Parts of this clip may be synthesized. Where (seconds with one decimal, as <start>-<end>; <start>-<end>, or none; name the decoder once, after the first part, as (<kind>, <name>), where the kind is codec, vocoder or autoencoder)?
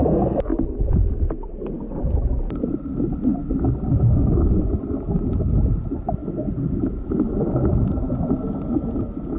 none